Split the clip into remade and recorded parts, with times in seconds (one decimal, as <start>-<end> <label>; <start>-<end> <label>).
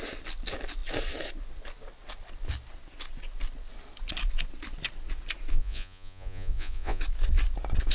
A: 0.0-5.5 recorded; 5.5-7.0 remade; 7.0-7.9 recorded